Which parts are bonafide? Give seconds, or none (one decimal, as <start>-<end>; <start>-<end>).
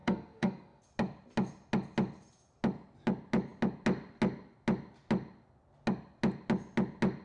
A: 0.8-7.2